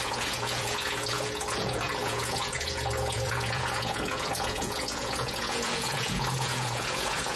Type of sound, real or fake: fake